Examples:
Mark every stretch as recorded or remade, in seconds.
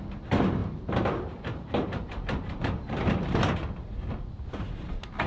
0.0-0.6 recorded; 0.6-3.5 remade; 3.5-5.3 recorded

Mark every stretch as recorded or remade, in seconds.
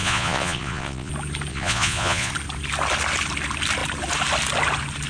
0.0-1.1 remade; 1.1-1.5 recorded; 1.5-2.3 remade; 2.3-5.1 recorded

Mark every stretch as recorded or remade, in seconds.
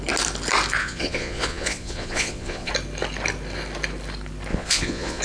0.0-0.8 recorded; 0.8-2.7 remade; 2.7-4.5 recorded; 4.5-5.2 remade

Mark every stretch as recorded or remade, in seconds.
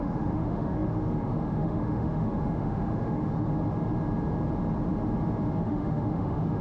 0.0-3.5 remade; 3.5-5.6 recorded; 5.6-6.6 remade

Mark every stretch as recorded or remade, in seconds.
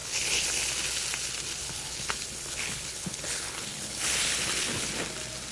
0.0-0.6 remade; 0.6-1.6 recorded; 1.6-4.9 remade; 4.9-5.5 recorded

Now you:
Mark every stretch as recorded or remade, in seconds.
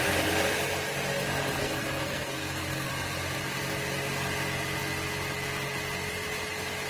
0.0-1.6 recorded; 1.6-2.9 remade; 2.9-6.9 recorded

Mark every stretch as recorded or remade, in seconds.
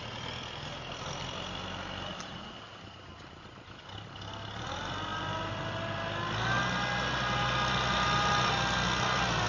0.0-9.5 recorded